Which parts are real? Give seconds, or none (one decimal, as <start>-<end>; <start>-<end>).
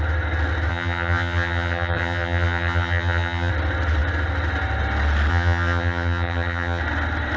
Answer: 0.0-0.7; 3.5-5.3; 6.8-7.4